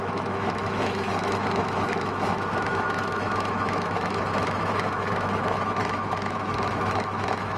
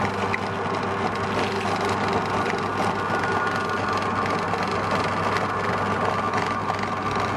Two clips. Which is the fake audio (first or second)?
first